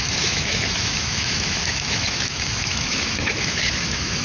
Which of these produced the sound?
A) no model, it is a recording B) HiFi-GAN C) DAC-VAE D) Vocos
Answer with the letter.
C